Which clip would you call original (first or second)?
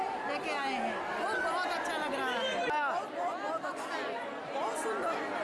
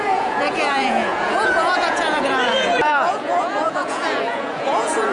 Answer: first